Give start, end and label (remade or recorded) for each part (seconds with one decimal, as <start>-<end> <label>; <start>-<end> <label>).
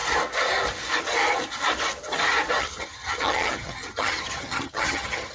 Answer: 0.0-2.6 recorded; 2.6-5.3 remade